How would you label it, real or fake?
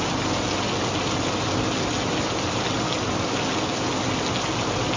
real